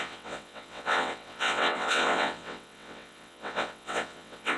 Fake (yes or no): yes